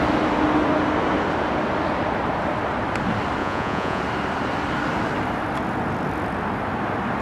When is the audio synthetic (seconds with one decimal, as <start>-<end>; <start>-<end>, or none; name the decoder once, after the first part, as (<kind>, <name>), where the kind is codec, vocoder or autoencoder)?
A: 3.4-4.0 (vocoder, Vocos)